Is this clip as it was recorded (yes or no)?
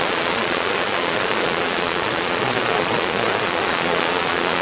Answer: no